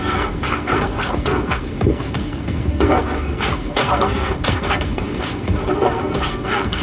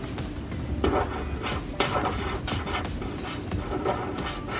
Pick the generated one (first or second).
first